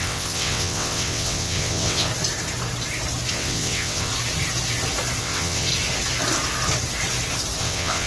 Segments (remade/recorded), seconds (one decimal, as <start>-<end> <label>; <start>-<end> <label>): 0.0-2.1 remade; 2.1-3.3 recorded; 3.3-4.1 remade; 4.1-5.2 recorded; 5.2-5.7 remade; 5.7-7.6 recorded; 7.6-8.1 remade